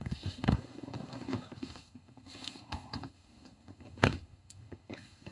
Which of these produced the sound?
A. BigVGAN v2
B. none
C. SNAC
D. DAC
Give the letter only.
C